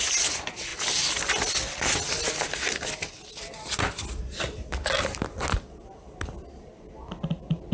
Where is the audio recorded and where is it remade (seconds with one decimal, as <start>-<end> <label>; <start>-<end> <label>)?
0.0-7.7 recorded